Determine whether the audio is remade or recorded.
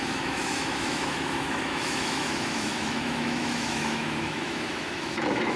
remade